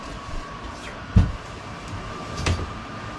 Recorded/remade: remade